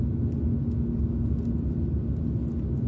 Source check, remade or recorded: recorded